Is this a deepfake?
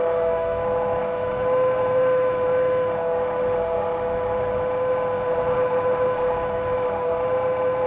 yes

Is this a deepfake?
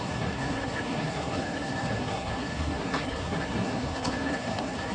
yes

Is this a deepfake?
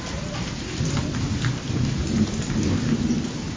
yes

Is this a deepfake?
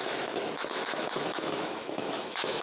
yes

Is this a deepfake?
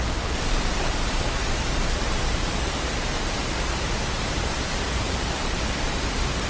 yes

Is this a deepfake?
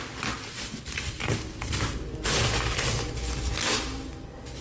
no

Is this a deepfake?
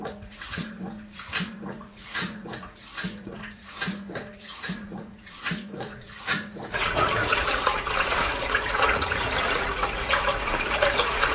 yes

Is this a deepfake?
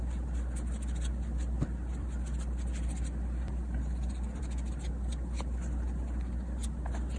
no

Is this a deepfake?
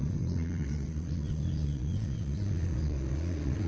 yes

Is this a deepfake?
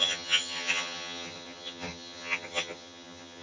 yes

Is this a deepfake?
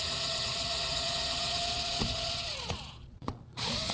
yes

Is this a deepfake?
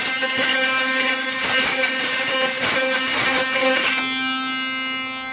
no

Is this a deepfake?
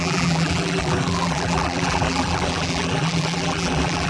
yes